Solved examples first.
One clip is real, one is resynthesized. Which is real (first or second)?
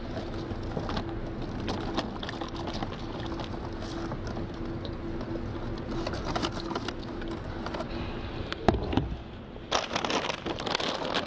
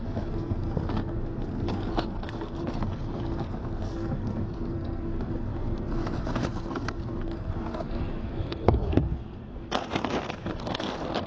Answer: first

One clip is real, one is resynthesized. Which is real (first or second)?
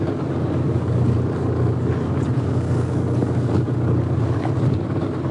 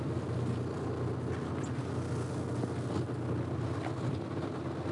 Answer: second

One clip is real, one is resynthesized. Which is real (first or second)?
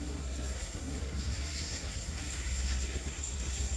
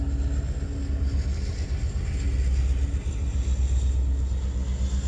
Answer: second